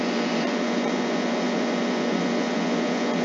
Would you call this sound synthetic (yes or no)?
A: yes